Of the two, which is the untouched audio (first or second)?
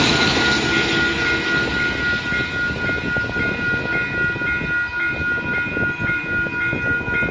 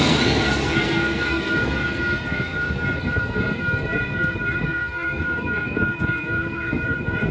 first